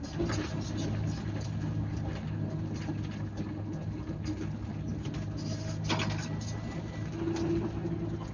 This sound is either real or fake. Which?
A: real